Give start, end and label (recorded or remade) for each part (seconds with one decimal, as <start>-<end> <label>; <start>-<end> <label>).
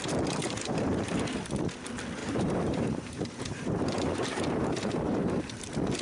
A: 0.0-0.4 recorded; 0.4-1.4 remade; 1.4-2.2 recorded; 2.2-5.5 remade; 5.5-6.0 recorded